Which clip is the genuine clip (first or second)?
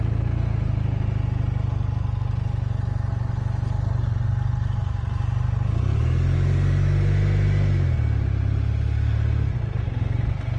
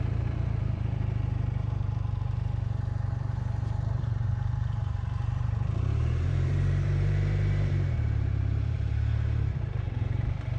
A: first